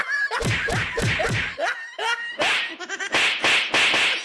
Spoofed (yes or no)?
no